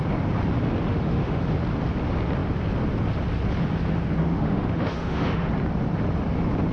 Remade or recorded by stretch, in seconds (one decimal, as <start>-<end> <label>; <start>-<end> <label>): 0.0-0.9 recorded; 0.9-1.4 remade; 1.4-4.2 recorded; 4.2-5.5 remade; 5.5-6.7 recorded